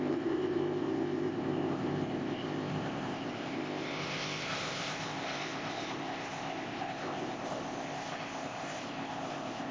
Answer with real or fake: fake